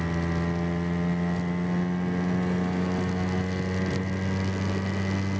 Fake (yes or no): no